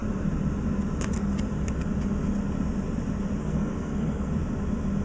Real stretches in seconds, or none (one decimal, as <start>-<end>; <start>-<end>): 0.0-3.4; 4.3-5.0